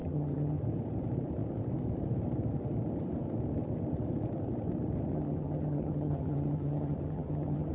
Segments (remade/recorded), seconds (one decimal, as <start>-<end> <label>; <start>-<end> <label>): 0.0-0.6 remade; 0.6-5.1 recorded; 5.1-7.7 remade